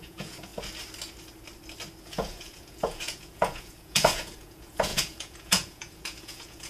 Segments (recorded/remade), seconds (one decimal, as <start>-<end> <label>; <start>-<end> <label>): 0.0-0.5 remade; 0.5-2.0 recorded; 2.0-6.7 remade